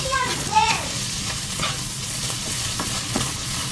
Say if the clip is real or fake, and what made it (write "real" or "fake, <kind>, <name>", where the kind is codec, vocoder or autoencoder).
fake, vocoder, Vocos